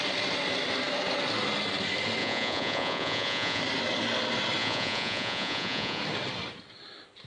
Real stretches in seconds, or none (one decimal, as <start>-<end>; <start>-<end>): 0.0-2.2; 3.6-4.6; 6.0-7.3